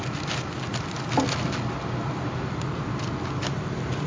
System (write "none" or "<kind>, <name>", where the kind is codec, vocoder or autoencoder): none